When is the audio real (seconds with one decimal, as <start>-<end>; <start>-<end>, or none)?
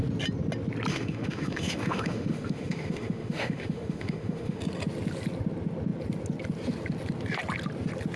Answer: 0.0-0.9; 4.6-8.2